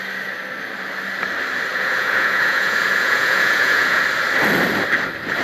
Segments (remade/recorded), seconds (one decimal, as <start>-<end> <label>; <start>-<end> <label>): 0.0-1.7 recorded; 1.7-4.0 remade; 4.0-5.4 recorded